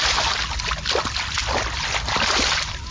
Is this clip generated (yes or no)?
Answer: no